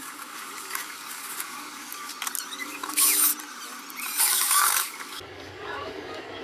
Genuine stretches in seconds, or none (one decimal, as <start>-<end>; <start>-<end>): 2.1-2.6; 3.3-4.2